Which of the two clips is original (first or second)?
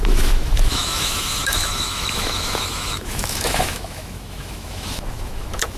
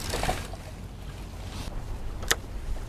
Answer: second